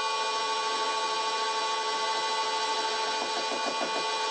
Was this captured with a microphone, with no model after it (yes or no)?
yes